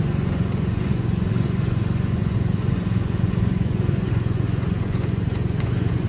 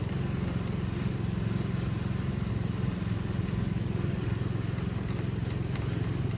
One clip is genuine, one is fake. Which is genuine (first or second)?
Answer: second